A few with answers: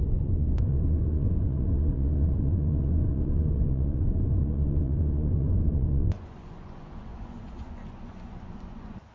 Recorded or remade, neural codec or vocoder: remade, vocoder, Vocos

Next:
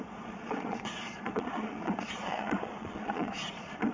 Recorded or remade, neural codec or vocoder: remade, vocoder, Vocos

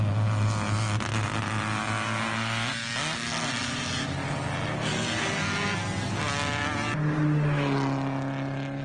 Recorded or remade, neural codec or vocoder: recorded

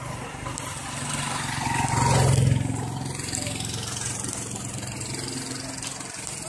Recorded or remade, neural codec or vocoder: recorded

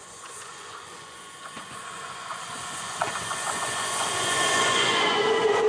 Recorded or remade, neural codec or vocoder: remade, vocoder, Vocos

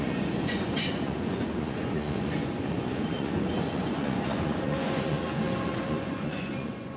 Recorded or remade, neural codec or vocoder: remade, vocoder, Vocos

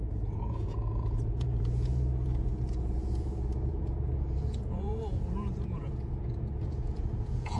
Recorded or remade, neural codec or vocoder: remade, vocoder, Vocos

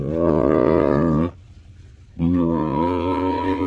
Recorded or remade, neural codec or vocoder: remade, vocoder, Vocos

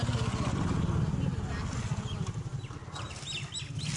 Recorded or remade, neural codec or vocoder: recorded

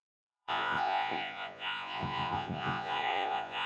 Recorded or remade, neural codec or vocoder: remade, vocoder, Vocos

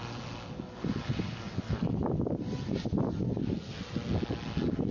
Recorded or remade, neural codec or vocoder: recorded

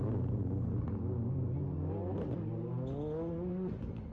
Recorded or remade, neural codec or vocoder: recorded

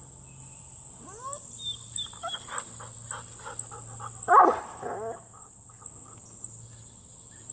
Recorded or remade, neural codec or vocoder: recorded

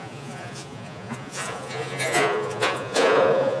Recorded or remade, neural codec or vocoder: remade, vocoder, Vocos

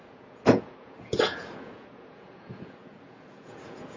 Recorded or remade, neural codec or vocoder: remade, vocoder, Vocos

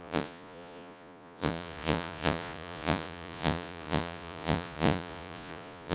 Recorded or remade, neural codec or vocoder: remade, vocoder, Vocos